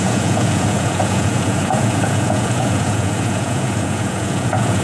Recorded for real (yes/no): no